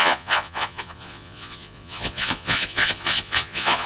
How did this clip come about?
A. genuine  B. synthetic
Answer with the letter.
B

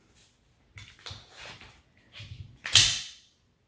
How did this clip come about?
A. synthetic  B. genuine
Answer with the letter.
B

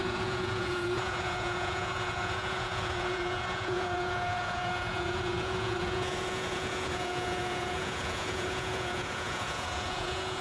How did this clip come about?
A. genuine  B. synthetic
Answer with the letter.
B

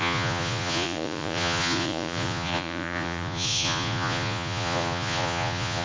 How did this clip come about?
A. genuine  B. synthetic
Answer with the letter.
B